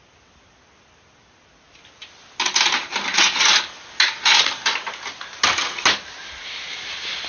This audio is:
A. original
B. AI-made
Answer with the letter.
A